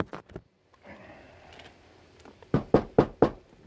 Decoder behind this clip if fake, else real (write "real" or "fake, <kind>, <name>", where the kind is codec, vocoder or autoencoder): real